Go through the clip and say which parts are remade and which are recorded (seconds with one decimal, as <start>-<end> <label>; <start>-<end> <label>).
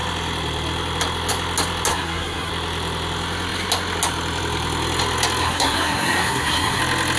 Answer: 0.0-1.9 recorded; 1.9-2.5 remade; 2.5-5.4 recorded; 5.4-6.8 remade; 6.8-7.2 recorded